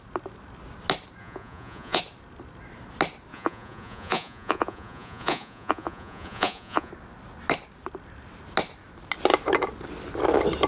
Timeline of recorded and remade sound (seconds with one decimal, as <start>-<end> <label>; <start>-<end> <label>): 0.0-1.2 recorded; 1.2-2.0 remade; 2.0-3.3 recorded; 3.3-6.9 remade; 6.9-10.7 recorded